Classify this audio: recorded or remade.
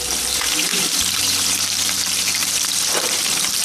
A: remade